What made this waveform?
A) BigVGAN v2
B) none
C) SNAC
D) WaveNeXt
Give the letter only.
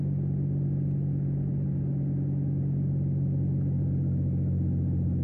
B